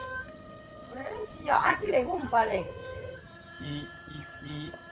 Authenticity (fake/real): fake